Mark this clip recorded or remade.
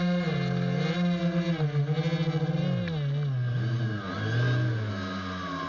recorded